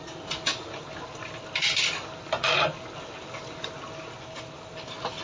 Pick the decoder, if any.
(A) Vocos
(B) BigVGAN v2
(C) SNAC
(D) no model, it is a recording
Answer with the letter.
D